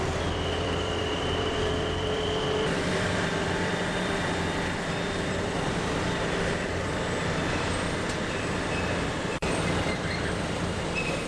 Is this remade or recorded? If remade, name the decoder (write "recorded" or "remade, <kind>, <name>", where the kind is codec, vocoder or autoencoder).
remade, vocoder, BigVGAN v2